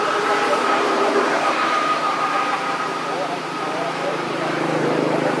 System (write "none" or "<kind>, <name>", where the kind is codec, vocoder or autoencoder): vocoder, BigVGAN v2